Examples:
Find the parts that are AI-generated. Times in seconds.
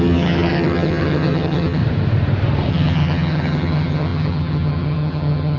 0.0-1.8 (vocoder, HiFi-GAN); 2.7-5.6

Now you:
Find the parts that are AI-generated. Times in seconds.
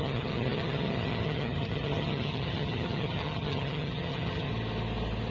0.0-4.5 (vocoder, HiFi-GAN)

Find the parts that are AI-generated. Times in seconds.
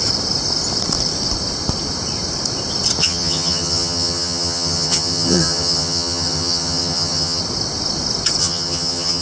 3.0-7.4 (vocoder, HiFi-GAN); 8.4-9.2